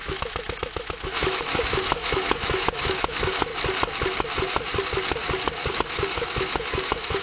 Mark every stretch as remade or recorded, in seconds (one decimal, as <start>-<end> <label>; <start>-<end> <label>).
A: 0.0-3.5 remade; 3.5-5.7 recorded; 5.7-7.2 remade